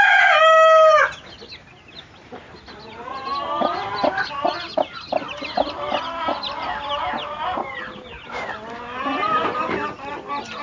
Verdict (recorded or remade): recorded